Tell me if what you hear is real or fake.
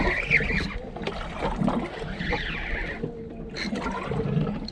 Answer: real